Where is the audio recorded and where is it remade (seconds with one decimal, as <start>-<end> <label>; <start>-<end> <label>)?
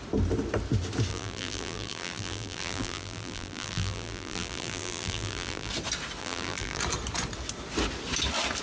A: 0.0-1.1 recorded; 1.1-5.7 remade; 5.7-6.2 recorded; 6.2-6.8 remade; 6.8-8.6 recorded